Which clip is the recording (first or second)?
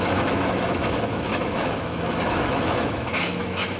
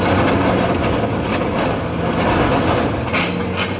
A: second